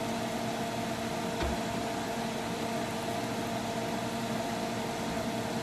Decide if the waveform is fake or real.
real